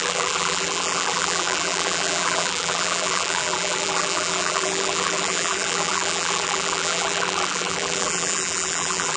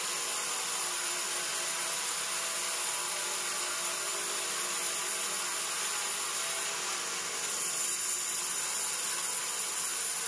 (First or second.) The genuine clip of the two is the second